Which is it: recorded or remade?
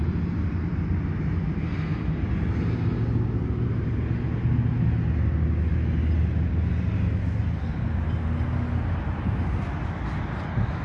recorded